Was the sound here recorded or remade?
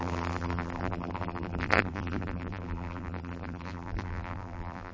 remade